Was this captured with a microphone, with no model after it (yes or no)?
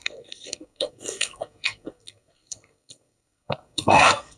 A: no